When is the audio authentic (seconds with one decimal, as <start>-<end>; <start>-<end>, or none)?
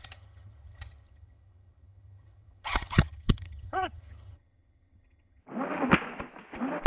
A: 5.4-6.9